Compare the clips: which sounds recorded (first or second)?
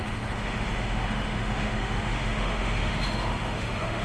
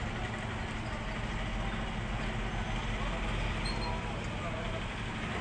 second